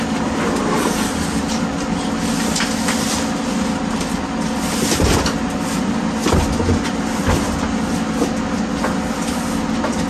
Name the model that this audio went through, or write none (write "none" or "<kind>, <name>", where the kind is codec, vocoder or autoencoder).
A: none